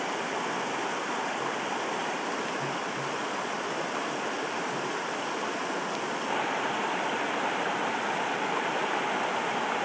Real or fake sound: real